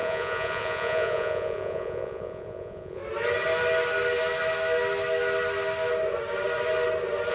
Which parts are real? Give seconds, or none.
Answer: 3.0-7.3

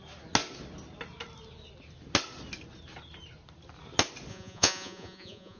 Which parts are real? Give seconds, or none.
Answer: 0.0-4.3

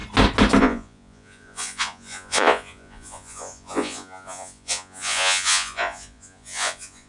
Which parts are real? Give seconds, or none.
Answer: 0.0-0.6